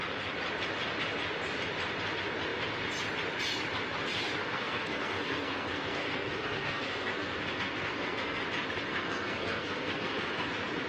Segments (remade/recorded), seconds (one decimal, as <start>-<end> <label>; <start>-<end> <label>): 0.0-4.4 recorded; 4.4-8.4 remade; 8.4-8.9 recorded; 8.9-10.5 remade; 10.5-10.9 recorded